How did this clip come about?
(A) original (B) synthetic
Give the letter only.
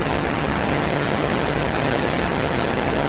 B